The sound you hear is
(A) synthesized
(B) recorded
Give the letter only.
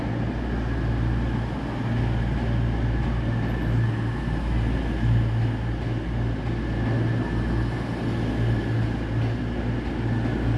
B